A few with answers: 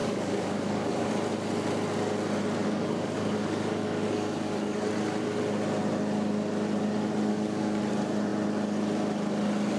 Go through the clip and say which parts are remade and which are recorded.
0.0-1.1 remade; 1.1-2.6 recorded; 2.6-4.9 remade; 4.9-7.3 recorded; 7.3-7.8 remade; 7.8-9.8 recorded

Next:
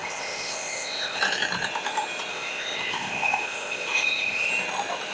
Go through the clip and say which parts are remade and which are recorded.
0.0-1.2 remade; 1.2-2.3 recorded; 2.3-4.5 remade; 4.5-5.1 recorded

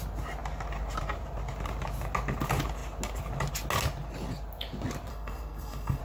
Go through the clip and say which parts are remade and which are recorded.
0.0-5.1 recorded; 5.1-6.0 remade

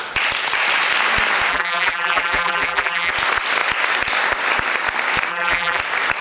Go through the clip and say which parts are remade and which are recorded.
0.0-1.5 recorded; 1.5-3.1 remade; 3.1-5.3 recorded; 5.3-5.8 remade; 5.8-6.2 recorded

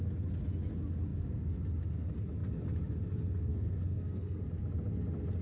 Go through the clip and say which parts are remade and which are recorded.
0.0-3.5 recorded; 3.5-4.4 remade; 4.4-5.4 recorded